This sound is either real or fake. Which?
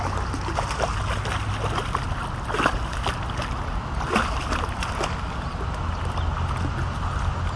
real